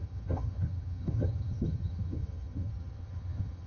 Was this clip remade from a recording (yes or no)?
yes